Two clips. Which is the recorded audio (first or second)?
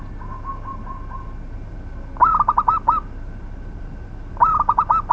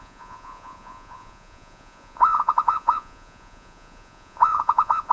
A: first